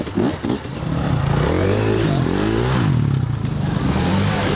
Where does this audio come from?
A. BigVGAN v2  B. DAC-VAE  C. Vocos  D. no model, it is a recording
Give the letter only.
D